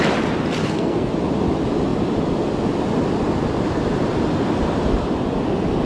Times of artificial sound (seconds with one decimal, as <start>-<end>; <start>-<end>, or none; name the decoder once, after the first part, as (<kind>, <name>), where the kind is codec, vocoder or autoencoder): 0.6-1.1 (codec, SNAC)

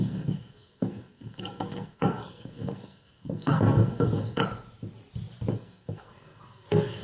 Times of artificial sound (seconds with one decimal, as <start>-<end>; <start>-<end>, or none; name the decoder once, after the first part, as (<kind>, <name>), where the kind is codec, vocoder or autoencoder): 0.0-4.4 (codec, SNAC); 5.5-7.0

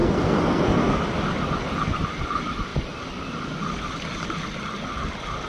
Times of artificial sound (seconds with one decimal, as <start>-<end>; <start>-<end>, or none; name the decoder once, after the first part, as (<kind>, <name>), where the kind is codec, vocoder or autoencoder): 0.0-1.0 (codec, SNAC)

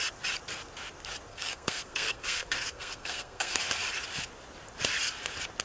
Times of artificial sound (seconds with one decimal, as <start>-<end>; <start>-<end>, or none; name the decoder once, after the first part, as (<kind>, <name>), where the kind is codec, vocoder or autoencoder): 1.3-3.6 (codec, SNAC)

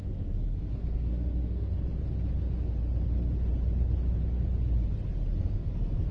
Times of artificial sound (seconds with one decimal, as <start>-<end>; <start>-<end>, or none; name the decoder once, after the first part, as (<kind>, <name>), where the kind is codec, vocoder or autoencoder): 0.0-1.7 (codec, SNAC); 5.4-6.1